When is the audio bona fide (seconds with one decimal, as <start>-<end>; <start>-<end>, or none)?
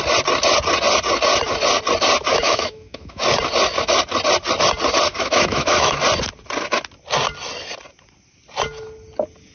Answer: 0.0-2.3; 3.2-5.1; 6.0-9.5